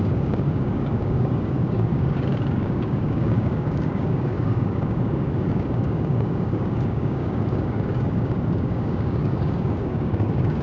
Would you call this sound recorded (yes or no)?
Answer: no